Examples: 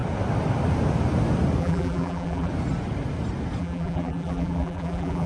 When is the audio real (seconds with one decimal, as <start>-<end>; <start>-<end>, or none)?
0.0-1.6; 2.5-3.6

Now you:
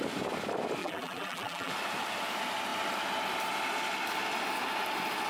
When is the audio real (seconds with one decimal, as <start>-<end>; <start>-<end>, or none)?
0.0-0.8; 1.7-5.3

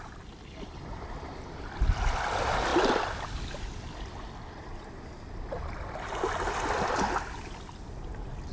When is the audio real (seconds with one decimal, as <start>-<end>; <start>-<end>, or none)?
0.0-8.5

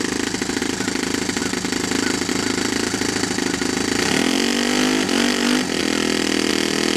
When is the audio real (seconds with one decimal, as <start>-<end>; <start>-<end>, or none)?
0.0-7.0